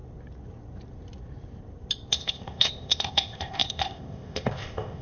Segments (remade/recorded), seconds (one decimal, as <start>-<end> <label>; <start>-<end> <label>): 0.0-2.1 recorded; 2.1-5.0 remade